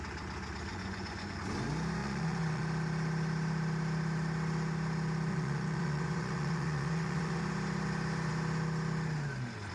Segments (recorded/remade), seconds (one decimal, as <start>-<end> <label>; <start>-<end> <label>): 0.0-0.7 recorded; 0.7-1.4 remade; 1.4-2.0 recorded; 2.0-2.6 remade; 2.6-5.3 recorded; 5.3-7.4 remade; 7.4-9.7 recorded